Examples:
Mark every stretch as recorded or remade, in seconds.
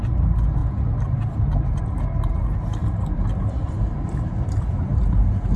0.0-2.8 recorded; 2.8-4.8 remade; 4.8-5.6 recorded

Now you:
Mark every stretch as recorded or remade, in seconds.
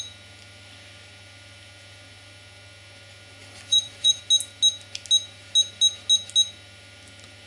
0.0-3.4 recorded; 3.4-4.2 remade; 4.2-7.5 recorded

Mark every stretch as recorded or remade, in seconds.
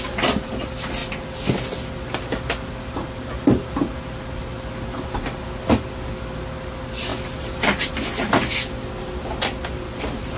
0.0-7.1 recorded; 7.1-7.7 remade; 7.7-10.4 recorded